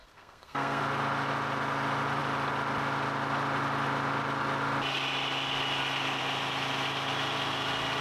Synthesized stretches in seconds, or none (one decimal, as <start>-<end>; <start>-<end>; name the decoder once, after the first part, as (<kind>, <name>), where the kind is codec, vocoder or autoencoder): 0.0-0.8 (codec, SNAC)